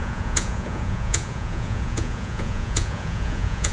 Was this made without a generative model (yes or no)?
no